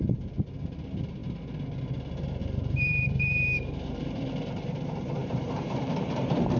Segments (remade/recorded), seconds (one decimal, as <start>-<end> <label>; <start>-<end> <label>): 0.0-2.4 recorded; 2.4-4.7 remade; 4.7-5.2 recorded; 5.2-6.6 remade

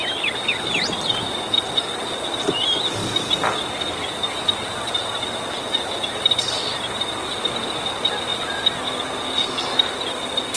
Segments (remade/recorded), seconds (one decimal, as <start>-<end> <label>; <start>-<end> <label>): 0.0-10.6 recorded

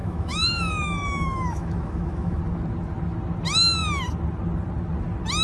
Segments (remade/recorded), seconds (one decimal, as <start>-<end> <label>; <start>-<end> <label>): 0.0-2.4 remade; 2.4-5.4 recorded

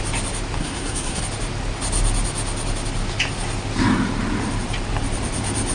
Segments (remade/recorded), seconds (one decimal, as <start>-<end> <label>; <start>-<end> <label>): 0.0-0.6 recorded; 0.6-1.2 remade; 1.2-5.7 recorded

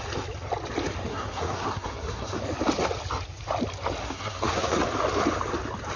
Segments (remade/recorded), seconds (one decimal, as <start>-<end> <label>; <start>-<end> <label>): 0.0-1.1 recorded; 1.1-2.4 remade; 2.4-4.0 recorded; 4.0-4.8 remade; 4.8-6.0 recorded

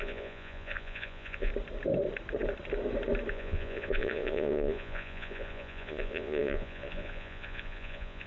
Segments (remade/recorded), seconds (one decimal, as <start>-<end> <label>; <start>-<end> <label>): 0.0-1.5 remade; 1.5-3.3 recorded; 3.3-8.3 remade